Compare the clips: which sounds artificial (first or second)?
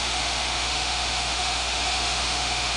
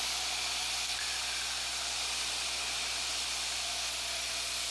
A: first